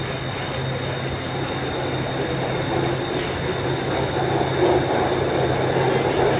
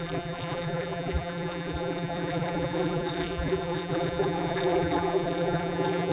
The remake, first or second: second